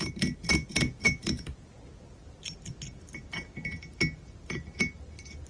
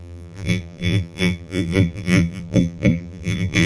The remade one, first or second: second